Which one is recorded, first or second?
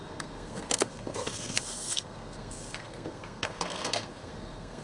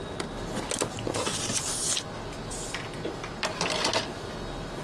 second